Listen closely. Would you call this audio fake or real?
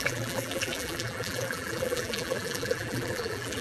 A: fake